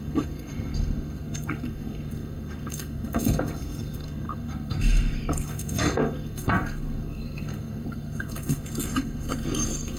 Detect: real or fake fake